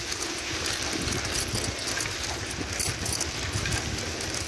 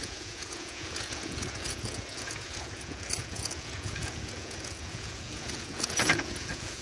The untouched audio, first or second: first